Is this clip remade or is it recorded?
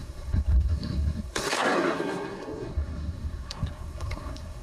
remade